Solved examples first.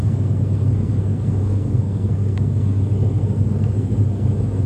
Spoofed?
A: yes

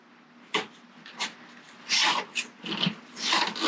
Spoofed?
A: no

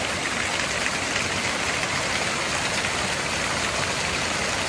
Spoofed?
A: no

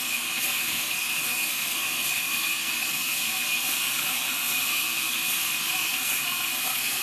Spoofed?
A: yes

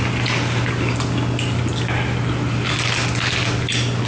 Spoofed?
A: no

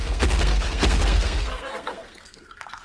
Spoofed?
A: yes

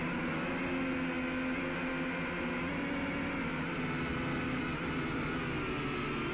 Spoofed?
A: no